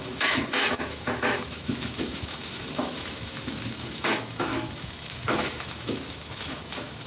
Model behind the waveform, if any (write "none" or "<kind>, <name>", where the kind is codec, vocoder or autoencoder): autoencoder, DAC-VAE